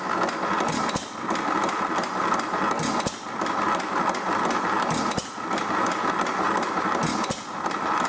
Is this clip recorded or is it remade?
recorded